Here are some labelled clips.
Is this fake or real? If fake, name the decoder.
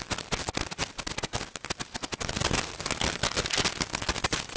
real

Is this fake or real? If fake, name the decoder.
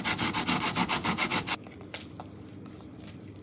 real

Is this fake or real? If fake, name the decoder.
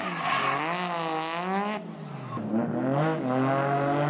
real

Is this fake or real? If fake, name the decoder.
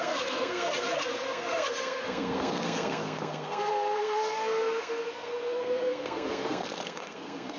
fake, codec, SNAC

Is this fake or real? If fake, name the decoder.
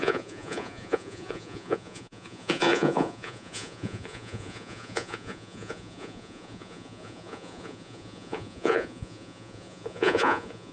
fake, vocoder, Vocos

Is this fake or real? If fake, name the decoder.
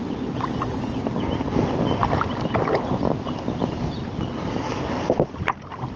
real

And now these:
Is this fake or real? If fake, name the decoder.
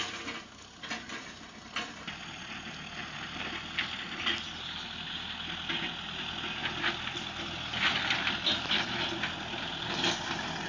real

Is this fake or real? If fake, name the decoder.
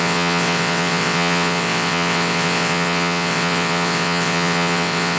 fake, vocoder, WaveNeXt